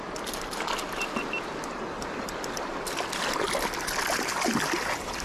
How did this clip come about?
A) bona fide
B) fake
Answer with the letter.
A